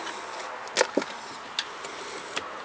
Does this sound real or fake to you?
real